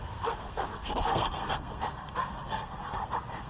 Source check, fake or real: fake